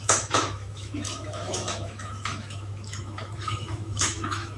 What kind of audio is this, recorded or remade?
remade